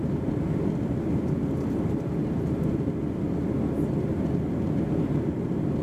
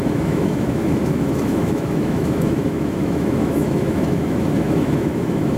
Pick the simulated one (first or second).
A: second